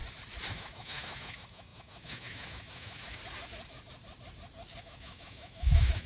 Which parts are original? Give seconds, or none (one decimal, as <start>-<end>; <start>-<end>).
0.0-0.5; 3.2-4.8